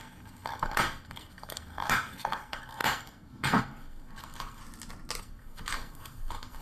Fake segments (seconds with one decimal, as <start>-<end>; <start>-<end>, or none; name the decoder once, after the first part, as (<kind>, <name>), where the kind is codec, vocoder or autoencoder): 0.0-4.6 (codec, SNAC); 5.2-6.6